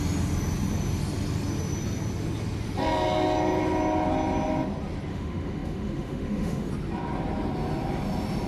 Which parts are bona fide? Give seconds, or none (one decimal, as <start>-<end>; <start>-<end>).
0.0-5.1; 6.7-8.5